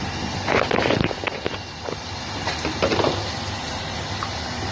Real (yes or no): yes